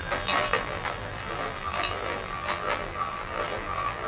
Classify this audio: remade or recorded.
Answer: remade